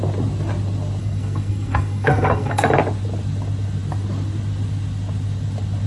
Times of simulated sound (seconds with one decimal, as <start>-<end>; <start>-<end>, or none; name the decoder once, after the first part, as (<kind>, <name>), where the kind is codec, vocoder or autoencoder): 1.0-2.7 (codec, SNAC)